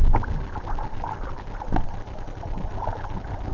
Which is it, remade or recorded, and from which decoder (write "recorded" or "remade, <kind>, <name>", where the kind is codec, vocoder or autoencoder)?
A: recorded